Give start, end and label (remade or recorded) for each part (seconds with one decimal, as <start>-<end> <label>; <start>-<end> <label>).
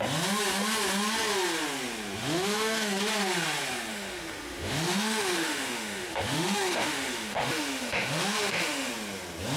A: 0.0-2.2 recorded; 2.2-3.0 remade; 3.0-3.9 recorded; 3.9-8.9 remade; 8.9-9.6 recorded